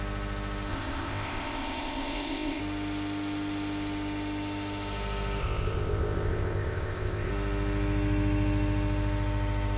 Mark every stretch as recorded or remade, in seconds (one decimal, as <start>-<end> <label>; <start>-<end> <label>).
0.0-0.7 recorded; 0.7-2.6 remade; 2.6-5.4 recorded; 5.4-7.3 remade; 7.3-9.8 recorded